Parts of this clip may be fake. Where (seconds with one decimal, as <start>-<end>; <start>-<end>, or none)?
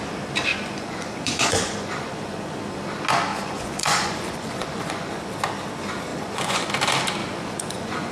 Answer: 0.5-2.5; 3.3-5.2; 6.1-6.7; 7.2-8.1